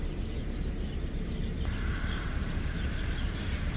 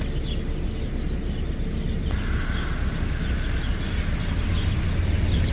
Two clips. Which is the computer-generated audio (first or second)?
first